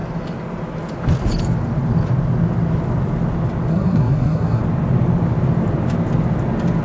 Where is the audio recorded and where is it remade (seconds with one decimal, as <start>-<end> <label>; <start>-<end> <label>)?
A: 0.0-3.7 recorded; 3.7-4.6 remade; 4.6-6.8 recorded